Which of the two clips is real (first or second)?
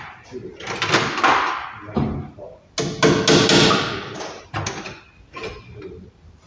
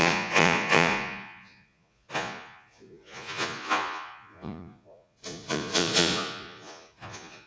first